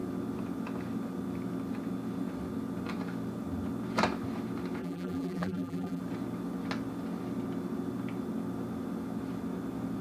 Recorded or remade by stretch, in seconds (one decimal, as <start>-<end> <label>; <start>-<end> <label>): 0.0-4.8 recorded; 4.8-6.0 remade; 6.0-10.0 recorded